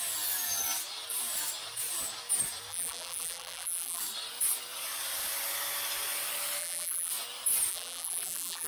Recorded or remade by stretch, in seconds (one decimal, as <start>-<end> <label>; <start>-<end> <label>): 0.0-2.7 recorded; 2.7-4.0 remade; 4.0-6.6 recorded; 6.6-7.1 remade; 7.1-7.7 recorded; 7.7-8.7 remade